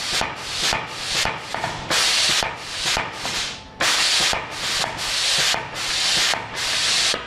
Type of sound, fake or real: real